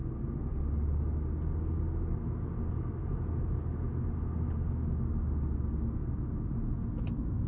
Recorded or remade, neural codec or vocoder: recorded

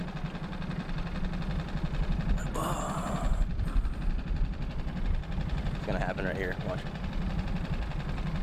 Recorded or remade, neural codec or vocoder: recorded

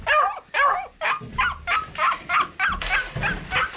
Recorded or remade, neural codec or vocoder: recorded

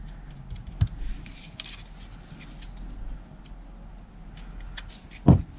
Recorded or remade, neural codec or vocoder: recorded